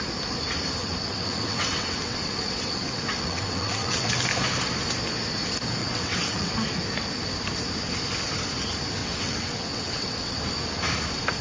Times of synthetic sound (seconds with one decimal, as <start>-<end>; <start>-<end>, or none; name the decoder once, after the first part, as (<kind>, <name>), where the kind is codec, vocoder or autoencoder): 0.8-4.1 (vocoder, WaveNeXt); 5.8-6.5; 9.0-10.4